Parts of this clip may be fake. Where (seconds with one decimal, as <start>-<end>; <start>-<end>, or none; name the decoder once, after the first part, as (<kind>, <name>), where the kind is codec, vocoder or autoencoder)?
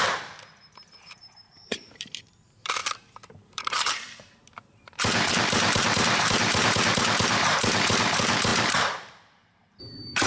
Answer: 0.0-10.3 (vocoder, BigVGAN v2)